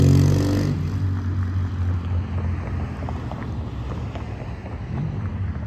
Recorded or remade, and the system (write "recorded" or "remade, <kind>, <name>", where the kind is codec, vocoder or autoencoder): recorded